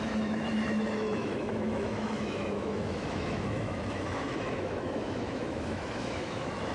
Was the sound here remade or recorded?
remade